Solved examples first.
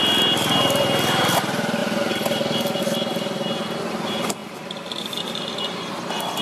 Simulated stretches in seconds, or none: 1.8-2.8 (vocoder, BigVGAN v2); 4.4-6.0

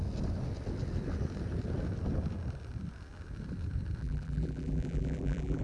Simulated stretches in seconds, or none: 4.0-5.6 (vocoder, BigVGAN v2)

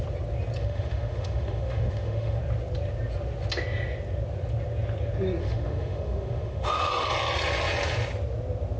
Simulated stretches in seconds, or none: 0.6-2.4 (autoencoder, DAC-VAE); 5.4-6.9

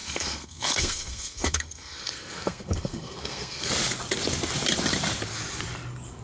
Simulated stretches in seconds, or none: 0.0-3.7 (codec, SNAC)

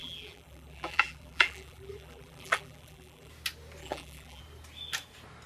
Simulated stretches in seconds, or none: 0.0-3.3 (vocoder, BigVGAN v2); 3.8-4.4

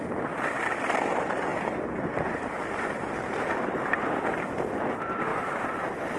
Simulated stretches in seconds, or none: none